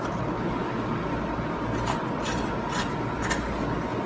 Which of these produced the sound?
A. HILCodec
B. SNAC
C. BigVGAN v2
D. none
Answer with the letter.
D